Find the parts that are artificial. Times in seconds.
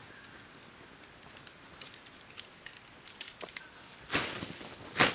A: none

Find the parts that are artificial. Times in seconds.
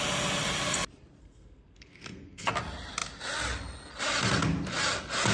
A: 1.2-2.5 (codec, SNAC)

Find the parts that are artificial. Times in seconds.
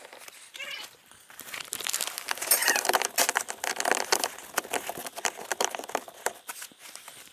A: 2.6-3.7 (vocoder, BigVGAN v2); 5.0-7.3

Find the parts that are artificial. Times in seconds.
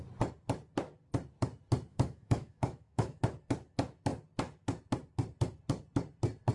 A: 1.9-3.2 (autoencoder, DAC-VAE)